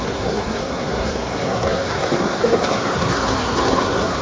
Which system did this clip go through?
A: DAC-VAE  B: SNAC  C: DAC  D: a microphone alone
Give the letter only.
B